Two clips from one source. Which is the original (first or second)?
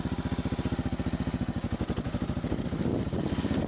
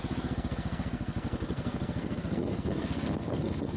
first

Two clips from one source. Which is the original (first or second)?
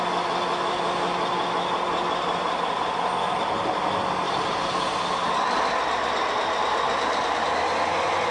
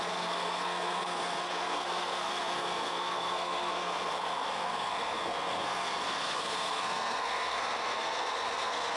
first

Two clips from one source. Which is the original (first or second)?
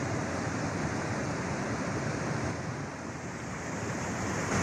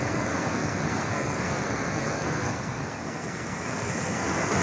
first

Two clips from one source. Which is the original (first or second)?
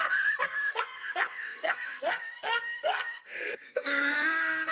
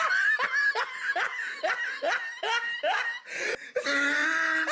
second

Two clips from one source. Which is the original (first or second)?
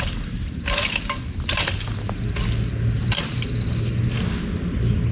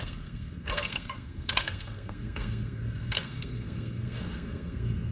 first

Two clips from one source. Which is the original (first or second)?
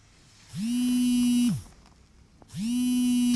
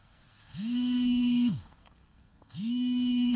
first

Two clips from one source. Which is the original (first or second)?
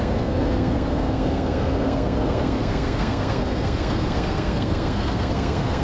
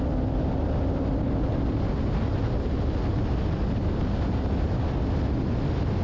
second